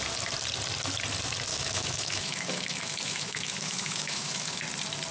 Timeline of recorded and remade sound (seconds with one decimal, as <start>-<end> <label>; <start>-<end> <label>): 0.0-1.5 recorded; 1.5-4.6 remade; 4.6-5.1 recorded